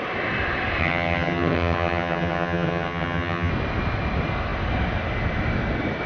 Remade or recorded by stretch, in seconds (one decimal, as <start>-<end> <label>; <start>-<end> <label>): 0.0-0.8 recorded; 0.8-3.5 remade; 3.5-6.1 recorded